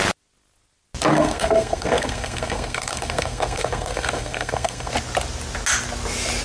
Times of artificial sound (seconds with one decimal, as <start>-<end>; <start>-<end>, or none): 1.1-4.9